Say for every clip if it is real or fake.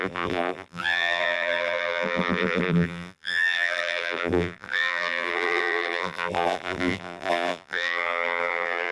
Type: fake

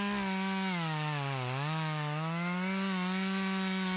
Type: real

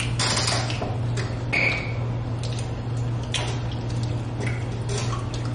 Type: real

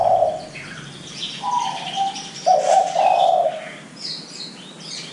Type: real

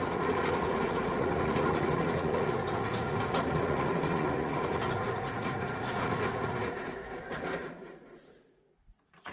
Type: fake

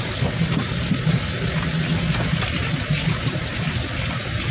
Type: real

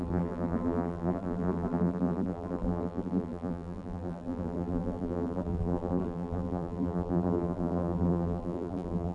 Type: fake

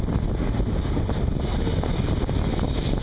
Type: real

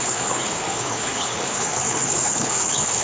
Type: fake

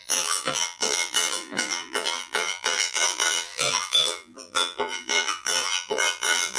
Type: fake